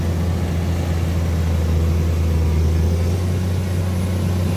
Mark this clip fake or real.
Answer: real